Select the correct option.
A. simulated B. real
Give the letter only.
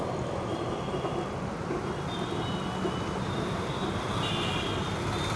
B